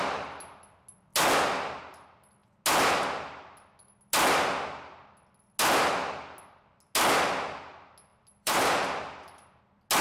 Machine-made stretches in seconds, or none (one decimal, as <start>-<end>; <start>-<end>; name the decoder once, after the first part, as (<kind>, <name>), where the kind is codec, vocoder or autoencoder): 8.1-9.6 (vocoder, BigVGAN v2)

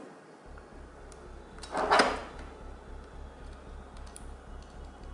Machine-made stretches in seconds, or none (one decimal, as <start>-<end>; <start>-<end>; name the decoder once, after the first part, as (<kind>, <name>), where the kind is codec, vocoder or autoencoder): none